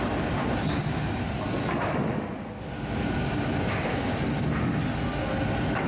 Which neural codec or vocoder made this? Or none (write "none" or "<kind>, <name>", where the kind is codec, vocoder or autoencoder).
none